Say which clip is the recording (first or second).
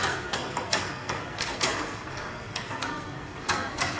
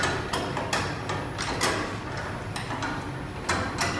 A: second